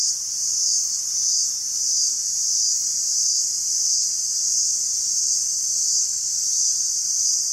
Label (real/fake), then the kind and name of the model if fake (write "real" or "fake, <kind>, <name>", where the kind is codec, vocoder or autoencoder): fake, vocoder, BigVGAN v2